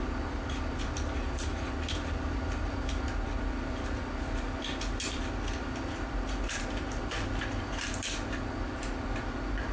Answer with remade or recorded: remade